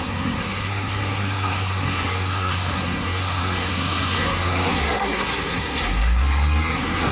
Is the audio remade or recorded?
remade